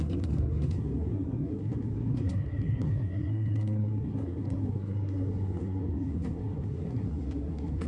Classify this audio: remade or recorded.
remade